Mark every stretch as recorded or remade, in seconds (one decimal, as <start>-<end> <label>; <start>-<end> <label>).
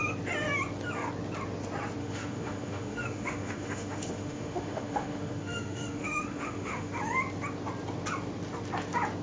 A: 0.0-2.0 recorded; 2.0-6.9 remade; 6.9-9.2 recorded